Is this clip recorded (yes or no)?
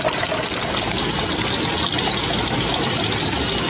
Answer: yes